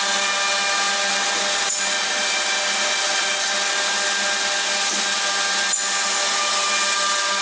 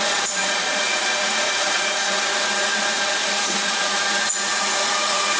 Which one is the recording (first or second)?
first